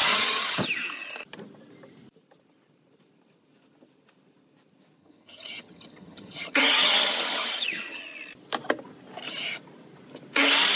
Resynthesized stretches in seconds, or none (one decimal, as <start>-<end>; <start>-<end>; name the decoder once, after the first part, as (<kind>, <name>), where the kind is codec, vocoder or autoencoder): 0.0-0.6 (vocoder, HiFi-GAN); 5.0-8.0